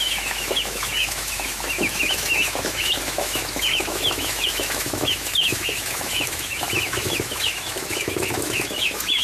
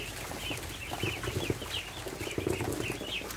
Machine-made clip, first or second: first